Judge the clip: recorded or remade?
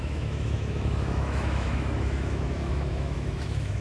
remade